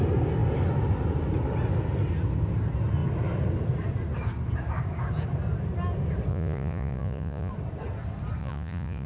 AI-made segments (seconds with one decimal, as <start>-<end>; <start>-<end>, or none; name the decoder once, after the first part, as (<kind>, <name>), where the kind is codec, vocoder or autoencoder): 6.3-7.5 (vocoder, Vocos); 8.4-9.1